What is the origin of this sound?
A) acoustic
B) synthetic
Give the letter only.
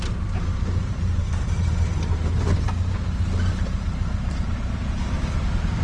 B